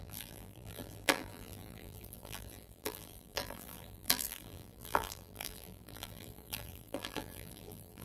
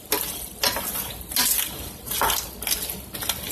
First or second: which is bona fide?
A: second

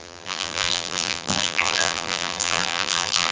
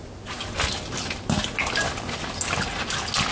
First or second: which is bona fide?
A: second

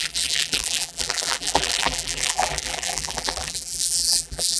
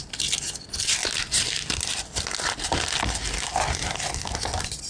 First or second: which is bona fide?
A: second